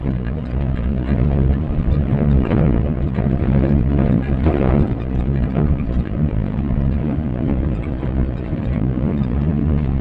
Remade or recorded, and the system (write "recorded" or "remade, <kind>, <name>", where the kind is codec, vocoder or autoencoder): remade, vocoder, Vocos